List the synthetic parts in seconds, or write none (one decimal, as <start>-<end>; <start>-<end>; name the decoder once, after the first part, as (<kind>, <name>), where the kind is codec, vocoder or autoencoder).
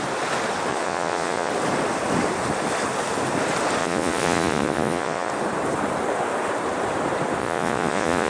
0.7-1.5 (vocoder, Vocos); 3.8-5.3; 7.4-8.3